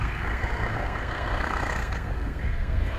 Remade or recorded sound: remade